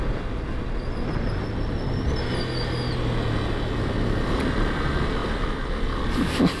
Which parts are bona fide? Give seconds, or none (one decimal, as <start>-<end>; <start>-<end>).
0.0-6.6